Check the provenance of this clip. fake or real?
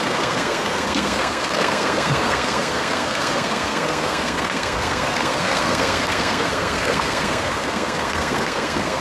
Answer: fake